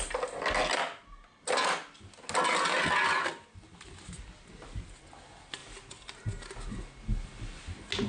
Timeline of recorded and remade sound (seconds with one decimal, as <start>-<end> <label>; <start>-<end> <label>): 0.0-8.1 recorded